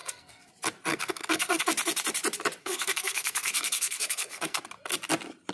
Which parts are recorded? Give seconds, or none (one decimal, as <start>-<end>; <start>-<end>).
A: 0.5-0.9; 1.6-2.6; 4.6-5.5